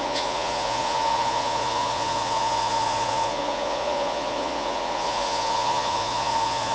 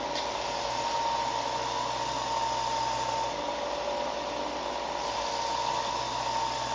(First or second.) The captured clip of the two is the second